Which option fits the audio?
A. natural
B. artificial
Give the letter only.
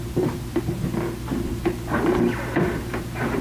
A